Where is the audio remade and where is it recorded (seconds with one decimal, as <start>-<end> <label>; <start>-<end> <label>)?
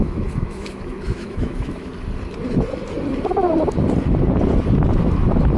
0.0-1.9 remade; 1.9-5.6 recorded